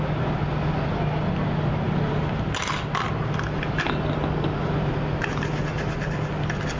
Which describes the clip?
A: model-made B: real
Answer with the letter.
B